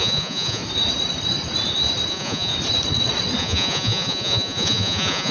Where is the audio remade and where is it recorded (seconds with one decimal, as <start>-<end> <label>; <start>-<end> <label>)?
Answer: 0.0-0.6 remade; 0.6-2.1 recorded; 2.1-2.5 remade; 2.5-3.4 recorded; 3.4-5.3 remade